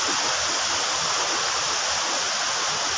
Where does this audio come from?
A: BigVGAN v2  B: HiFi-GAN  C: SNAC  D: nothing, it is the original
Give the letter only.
D